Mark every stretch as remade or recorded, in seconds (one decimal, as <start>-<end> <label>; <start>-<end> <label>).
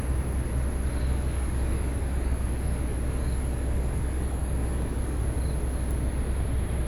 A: 0.0-1.1 recorded; 1.1-5.2 remade; 5.2-6.9 recorded